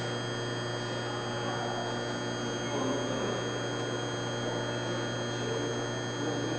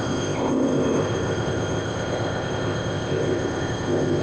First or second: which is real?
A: first